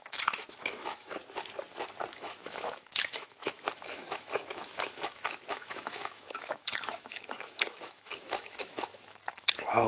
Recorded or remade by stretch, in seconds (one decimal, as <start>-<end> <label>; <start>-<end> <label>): 0.0-1.2 remade; 1.2-2.1 recorded; 2.1-9.9 remade